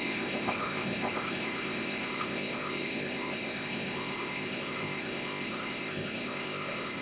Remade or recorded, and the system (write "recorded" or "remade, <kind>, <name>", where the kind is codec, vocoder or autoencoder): remade, codec, ZipCodec